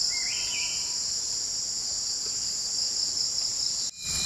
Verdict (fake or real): real